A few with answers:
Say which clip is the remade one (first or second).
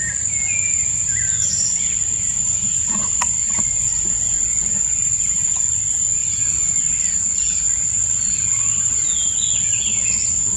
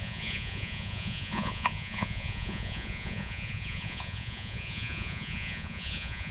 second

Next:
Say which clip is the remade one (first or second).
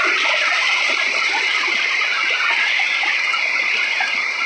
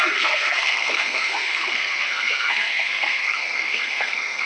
second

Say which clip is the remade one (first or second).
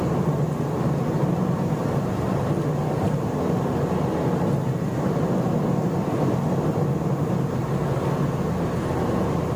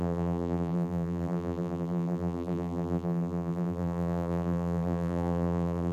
second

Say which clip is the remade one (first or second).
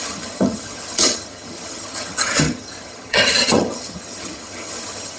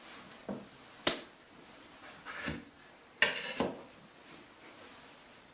first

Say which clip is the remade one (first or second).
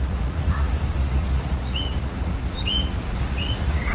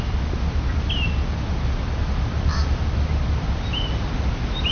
first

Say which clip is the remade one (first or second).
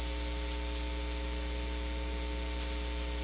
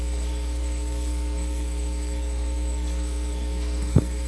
second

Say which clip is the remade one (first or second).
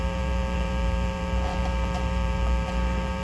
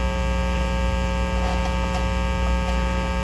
first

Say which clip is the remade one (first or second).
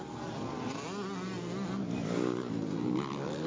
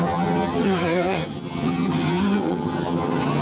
second